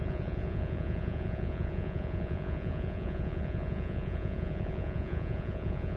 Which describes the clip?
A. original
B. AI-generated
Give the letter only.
B